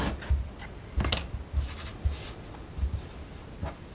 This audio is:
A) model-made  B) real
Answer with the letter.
B